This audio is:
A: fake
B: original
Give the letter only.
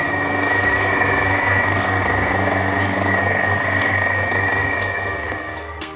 A